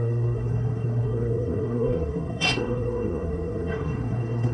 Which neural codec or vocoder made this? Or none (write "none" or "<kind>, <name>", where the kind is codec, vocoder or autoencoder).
codec, SNAC